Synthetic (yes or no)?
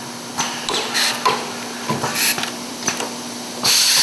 no